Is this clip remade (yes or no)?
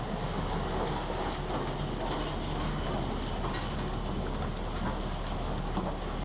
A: no